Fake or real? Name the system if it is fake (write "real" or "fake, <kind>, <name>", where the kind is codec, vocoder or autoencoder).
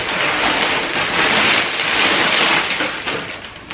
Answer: real